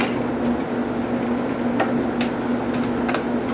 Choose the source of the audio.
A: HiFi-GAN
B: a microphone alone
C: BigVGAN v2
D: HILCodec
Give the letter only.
B